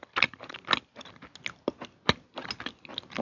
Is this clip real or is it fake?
real